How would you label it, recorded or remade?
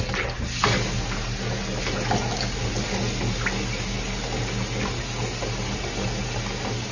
recorded